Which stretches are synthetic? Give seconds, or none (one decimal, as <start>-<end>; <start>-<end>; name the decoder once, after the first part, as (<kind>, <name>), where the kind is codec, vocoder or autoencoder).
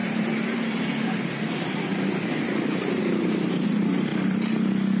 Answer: 0.0-3.0 (vocoder, BigVGAN v2)